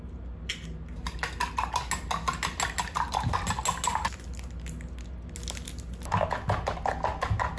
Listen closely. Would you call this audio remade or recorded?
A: recorded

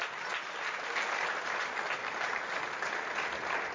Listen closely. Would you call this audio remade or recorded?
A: recorded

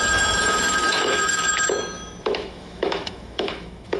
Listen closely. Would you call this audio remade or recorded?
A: remade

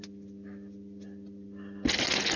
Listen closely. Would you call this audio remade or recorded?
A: recorded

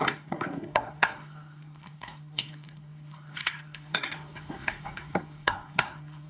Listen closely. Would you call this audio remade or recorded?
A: remade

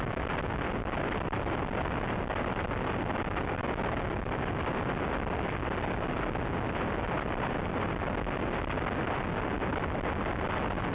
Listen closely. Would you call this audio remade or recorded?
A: recorded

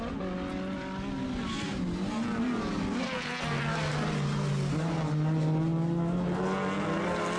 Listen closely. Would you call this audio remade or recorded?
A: recorded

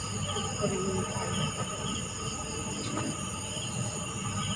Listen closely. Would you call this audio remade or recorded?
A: recorded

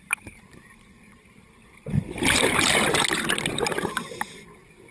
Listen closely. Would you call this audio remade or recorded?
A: remade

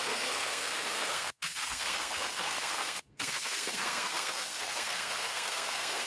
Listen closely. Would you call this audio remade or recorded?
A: remade